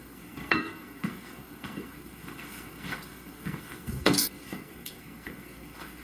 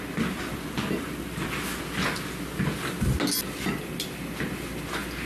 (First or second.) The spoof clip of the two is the first